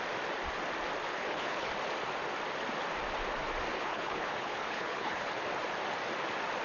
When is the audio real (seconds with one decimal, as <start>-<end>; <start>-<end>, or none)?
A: 0.0-1.1; 1.7-3.7; 5.3-6.6